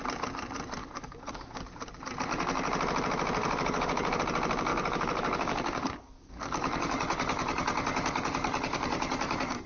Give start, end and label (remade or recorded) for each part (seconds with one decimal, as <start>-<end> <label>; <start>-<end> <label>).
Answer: 0.0-0.8 recorded; 0.8-1.6 remade; 1.6-3.4 recorded; 3.4-4.2 remade; 4.2-4.7 recorded; 4.7-9.7 remade